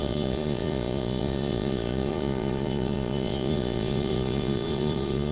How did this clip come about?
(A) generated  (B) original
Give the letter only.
A